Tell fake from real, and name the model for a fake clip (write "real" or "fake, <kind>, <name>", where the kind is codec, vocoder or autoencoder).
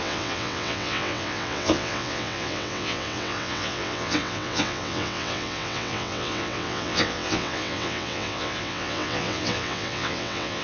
fake, vocoder, WaveNeXt